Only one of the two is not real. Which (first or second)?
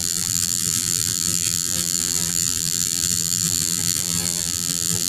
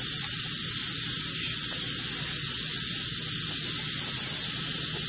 first